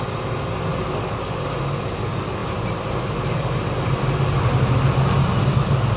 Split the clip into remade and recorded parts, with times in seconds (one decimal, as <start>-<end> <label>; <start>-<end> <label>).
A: 0.0-0.7 recorded; 0.7-1.6 remade; 1.6-6.0 recorded